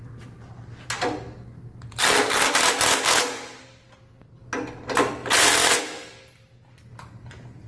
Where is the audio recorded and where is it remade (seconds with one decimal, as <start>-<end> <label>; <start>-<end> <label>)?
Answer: 0.0-5.2 recorded; 5.2-5.8 remade; 5.8-7.7 recorded

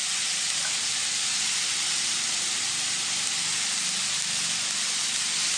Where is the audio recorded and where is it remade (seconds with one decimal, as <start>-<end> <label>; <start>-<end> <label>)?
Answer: 0.0-3.3 remade; 3.3-5.6 recorded